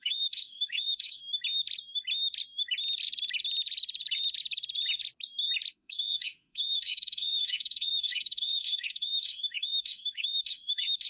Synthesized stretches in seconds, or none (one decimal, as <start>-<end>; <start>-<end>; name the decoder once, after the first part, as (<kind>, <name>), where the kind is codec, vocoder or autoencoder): 0.0-1.2 (autoencoder, DAC-VAE); 5.7-11.1